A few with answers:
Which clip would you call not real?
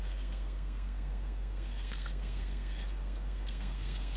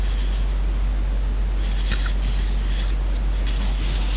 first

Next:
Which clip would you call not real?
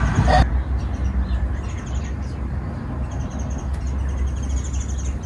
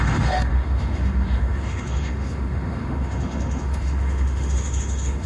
second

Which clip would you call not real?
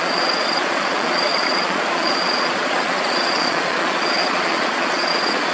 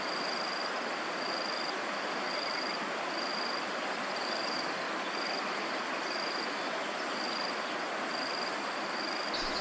first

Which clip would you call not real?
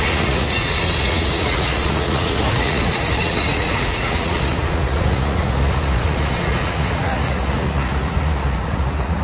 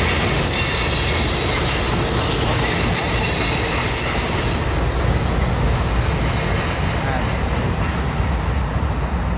first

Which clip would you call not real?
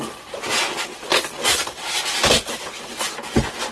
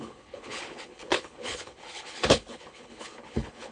second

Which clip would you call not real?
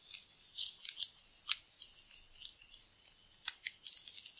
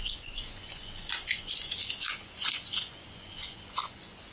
second